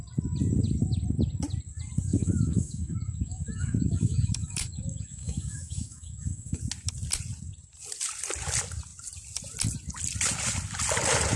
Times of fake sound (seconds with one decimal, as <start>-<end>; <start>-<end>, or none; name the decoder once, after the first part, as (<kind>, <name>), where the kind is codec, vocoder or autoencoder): 2.1-6.6 (autoencoder, DAC-VAE)